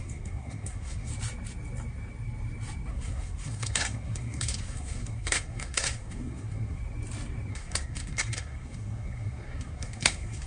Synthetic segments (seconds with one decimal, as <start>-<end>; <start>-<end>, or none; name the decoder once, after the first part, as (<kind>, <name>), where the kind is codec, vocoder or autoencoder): 0.0-1.1 (codec, SNAC); 2.9-6.8; 7.5-10.5